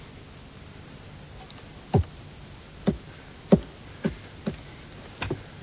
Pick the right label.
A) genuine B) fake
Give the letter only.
A